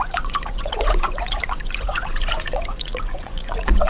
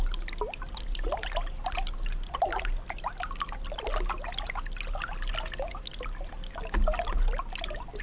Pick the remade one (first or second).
first